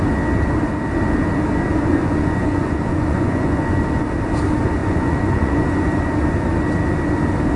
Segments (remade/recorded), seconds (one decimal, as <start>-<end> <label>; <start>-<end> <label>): 0.0-1.7 recorded; 1.7-3.8 remade; 3.8-4.8 recorded; 4.8-6.0 remade; 6.0-7.6 recorded